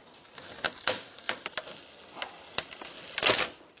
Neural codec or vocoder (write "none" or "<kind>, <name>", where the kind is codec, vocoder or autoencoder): none